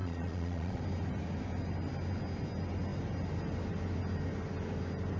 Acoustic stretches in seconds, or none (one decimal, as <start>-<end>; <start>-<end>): 0.8-5.2